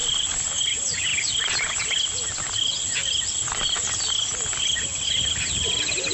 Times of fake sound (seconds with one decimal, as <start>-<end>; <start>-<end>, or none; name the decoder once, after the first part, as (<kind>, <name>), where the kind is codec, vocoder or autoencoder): 0.0-0.5 (vocoder, BigVGAN v2)